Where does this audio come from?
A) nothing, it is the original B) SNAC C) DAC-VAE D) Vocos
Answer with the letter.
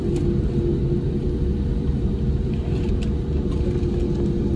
A